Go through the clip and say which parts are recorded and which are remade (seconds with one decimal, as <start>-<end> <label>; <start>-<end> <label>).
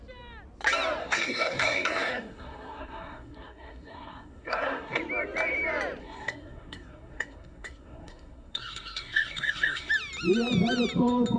0.0-1.0 recorded; 1.0-5.0 remade; 5.0-6.0 recorded; 6.0-9.9 remade; 9.9-11.4 recorded